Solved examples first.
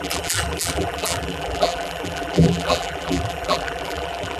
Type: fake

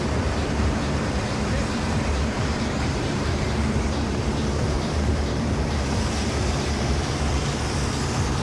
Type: fake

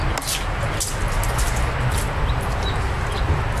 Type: real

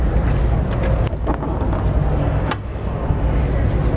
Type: real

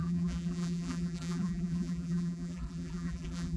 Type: fake